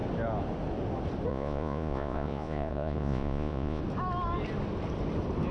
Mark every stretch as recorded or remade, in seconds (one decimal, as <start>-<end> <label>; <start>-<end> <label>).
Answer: 0.0-1.3 recorded; 1.3-3.8 remade; 3.8-5.5 recorded